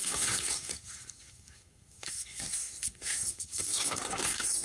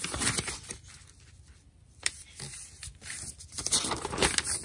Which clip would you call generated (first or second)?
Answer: first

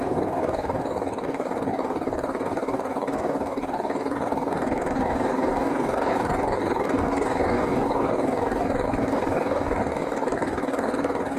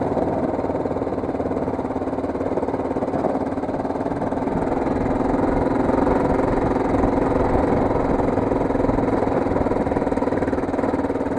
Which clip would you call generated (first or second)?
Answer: first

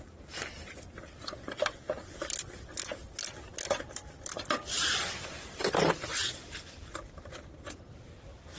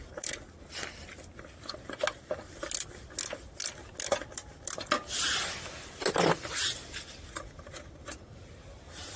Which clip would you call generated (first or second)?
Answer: first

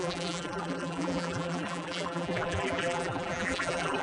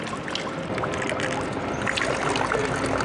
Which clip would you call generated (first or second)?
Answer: first